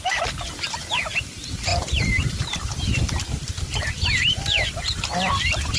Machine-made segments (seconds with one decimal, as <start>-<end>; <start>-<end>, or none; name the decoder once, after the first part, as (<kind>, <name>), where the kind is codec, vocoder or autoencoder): 0.0-5.8 (vocoder, BigVGAN v2)